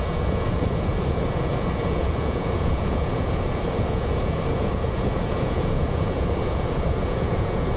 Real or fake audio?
fake